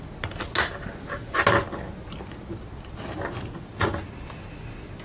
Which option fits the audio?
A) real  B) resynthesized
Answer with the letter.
A